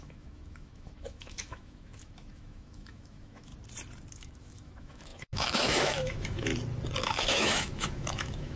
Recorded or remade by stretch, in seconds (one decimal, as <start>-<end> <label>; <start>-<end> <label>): 0.0-3.5 remade; 3.5-4.1 recorded; 4.1-6.5 remade; 6.5-7.0 recorded; 7.0-8.6 remade